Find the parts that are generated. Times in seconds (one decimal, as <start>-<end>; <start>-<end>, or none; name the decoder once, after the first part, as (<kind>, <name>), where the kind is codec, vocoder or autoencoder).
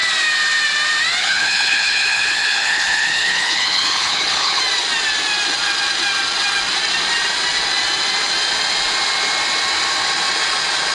1.2-4.6 (codec, HILCodec)